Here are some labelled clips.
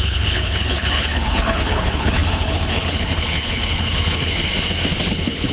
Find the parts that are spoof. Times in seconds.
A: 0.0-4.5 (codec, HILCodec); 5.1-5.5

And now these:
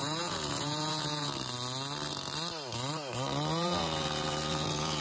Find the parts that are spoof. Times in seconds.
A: 0.0-1.3 (vocoder, Vocos); 3.5-5.0

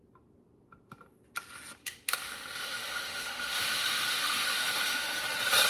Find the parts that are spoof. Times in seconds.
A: 1.8-5.2 (autoencoder, DAC-VAE)